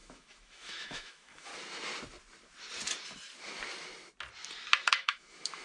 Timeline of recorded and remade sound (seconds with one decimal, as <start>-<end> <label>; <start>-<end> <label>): 0.0-1.5 remade; 1.5-4.9 recorded; 4.9-5.6 remade